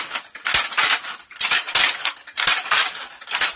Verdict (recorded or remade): recorded